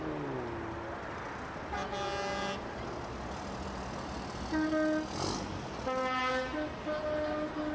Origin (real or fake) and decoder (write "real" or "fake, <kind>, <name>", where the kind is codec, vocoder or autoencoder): real